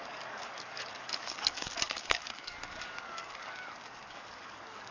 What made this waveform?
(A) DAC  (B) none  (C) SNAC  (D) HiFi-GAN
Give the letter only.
A